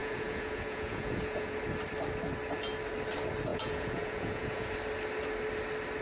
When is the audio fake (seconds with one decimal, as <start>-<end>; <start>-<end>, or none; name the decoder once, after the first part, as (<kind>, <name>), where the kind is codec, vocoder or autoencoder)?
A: 0.0-1.6 (vocoder, Vocos); 3.5-4.7